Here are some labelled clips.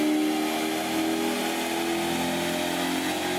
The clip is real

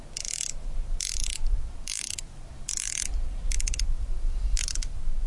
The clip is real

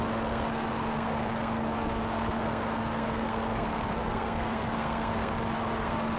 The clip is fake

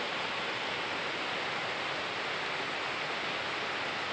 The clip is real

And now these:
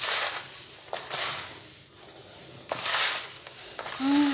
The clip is real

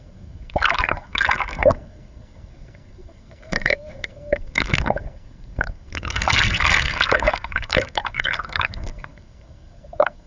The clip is fake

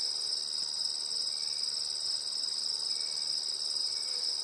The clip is real